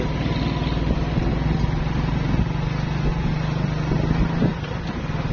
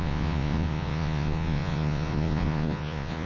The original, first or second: first